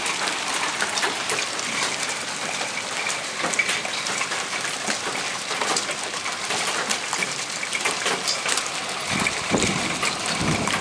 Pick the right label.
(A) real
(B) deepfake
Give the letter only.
B